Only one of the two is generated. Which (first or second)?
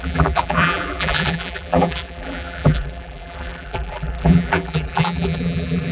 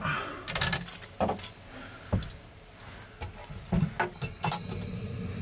first